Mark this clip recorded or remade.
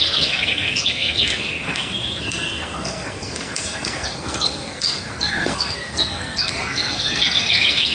remade